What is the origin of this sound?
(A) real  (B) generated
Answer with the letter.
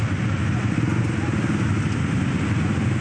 A